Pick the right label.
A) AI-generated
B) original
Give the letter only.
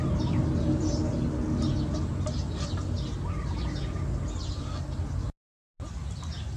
B